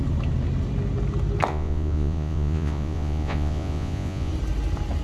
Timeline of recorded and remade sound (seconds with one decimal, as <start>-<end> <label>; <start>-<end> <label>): 0.0-1.5 recorded; 1.5-4.3 remade; 4.3-5.0 recorded